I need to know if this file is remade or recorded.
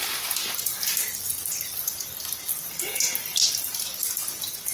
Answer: recorded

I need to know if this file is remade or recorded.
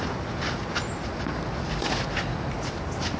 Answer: recorded